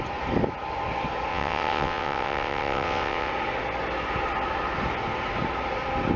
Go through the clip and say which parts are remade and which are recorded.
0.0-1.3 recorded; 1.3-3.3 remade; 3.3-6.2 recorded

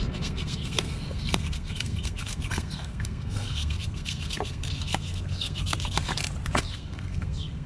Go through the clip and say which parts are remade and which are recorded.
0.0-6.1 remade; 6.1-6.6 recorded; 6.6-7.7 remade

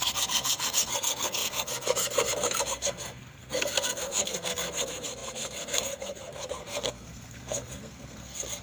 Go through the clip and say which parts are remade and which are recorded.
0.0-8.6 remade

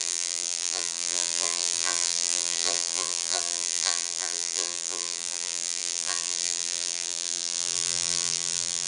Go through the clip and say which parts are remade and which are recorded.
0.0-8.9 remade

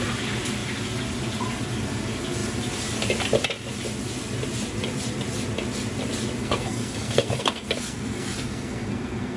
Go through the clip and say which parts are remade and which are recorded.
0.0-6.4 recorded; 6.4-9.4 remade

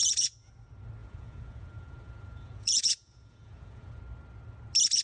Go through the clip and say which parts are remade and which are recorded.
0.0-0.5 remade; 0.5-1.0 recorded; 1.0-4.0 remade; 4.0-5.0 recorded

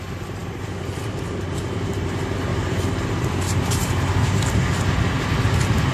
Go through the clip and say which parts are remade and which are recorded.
0.0-2.5 recorded; 2.5-4.4 remade; 4.4-5.9 recorded

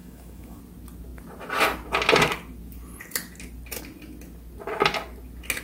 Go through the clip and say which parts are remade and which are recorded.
0.0-0.6 remade; 0.6-5.6 recorded